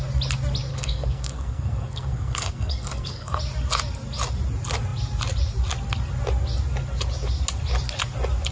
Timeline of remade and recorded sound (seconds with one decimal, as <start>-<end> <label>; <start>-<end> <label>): 0.0-0.7 recorded; 0.7-3.4 remade; 3.4-8.5 recorded